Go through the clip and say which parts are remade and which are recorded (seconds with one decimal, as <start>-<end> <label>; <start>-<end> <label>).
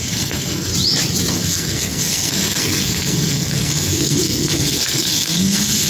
0.0-0.7 remade; 0.7-1.3 recorded; 1.3-5.9 remade